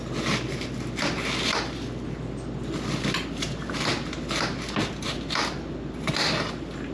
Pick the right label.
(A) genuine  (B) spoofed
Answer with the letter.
A